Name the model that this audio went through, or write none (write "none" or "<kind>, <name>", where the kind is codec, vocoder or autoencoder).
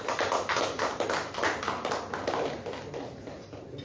none